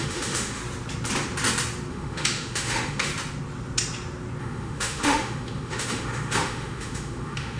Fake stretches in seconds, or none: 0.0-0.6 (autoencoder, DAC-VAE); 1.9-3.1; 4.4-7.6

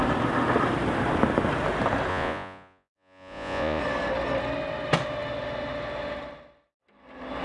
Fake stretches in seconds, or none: 2.1-3.8 (vocoder, Vocos)

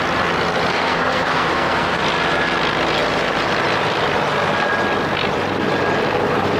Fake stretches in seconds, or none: 0.7-2.0 (codec, SNAC)